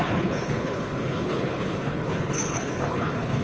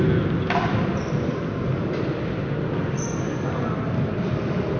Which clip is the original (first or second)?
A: second